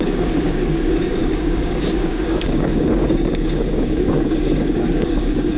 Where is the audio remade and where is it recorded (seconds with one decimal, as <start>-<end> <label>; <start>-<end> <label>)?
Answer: 0.0-5.6 remade